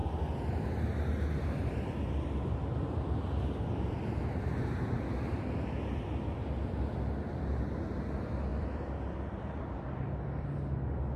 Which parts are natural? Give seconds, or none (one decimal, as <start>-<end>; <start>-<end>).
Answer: 0.0-8.5; 9.8-11.2